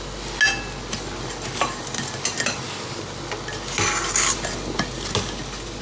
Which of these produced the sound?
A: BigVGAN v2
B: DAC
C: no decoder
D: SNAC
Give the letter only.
C